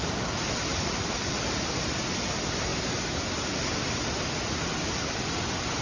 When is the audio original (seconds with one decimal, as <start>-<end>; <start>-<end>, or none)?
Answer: 0.0-0.7; 1.7-5.8